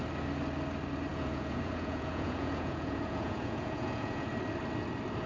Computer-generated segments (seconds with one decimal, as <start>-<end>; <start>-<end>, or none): 1.1-4.3